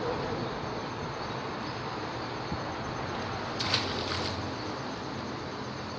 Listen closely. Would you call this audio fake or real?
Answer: real